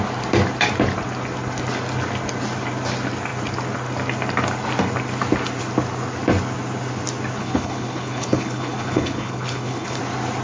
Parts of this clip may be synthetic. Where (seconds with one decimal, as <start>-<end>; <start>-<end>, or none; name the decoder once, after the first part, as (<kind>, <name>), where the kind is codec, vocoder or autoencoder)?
7.4-10.0 (codec, HILCodec)